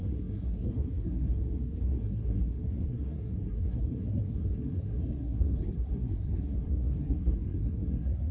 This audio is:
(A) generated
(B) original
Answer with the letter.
A